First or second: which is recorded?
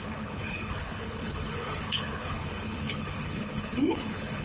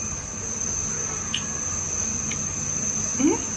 second